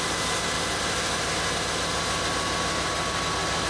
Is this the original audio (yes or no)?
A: yes